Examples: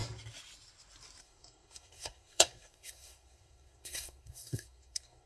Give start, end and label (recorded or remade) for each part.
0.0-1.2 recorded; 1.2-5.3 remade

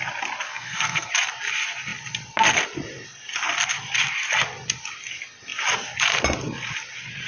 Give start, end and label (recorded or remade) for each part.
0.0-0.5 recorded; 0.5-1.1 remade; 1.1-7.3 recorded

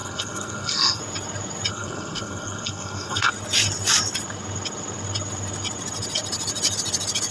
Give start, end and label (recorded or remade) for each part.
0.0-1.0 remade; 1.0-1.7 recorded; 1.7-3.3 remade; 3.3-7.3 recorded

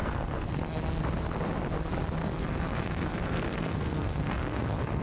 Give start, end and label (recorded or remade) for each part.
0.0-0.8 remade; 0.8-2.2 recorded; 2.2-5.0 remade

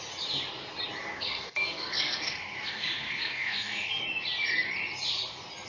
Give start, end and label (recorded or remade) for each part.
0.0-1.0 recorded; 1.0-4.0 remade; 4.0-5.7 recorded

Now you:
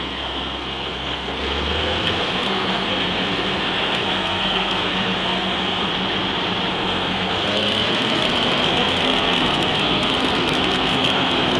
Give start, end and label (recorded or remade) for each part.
0.0-5.9 remade; 5.9-6.7 recorded; 6.7-11.6 remade

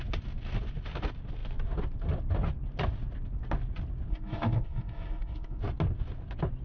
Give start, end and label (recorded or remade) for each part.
0.0-4.1 recorded; 4.1-5.6 remade; 5.6-6.6 recorded